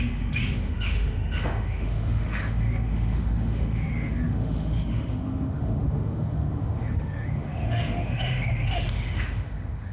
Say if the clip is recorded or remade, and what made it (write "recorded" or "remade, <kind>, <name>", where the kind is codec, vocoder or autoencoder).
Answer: remade, autoencoder, DAC-VAE